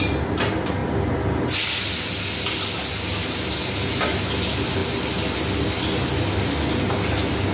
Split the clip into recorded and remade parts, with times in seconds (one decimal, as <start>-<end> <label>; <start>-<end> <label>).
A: 0.0-7.5 recorded